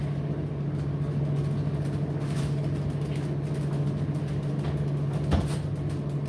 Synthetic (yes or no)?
no